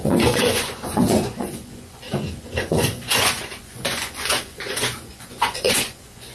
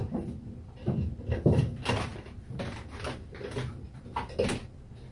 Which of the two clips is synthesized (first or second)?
first